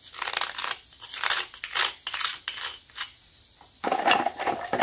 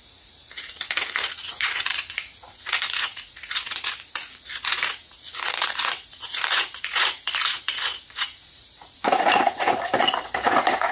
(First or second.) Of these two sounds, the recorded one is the first